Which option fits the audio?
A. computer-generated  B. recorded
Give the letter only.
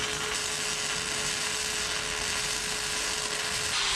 B